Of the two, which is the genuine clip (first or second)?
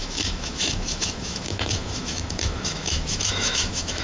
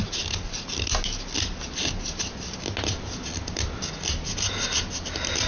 second